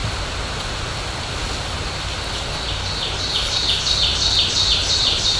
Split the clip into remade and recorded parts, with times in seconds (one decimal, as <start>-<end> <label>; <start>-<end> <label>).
0.0-3.2 recorded; 3.2-5.4 remade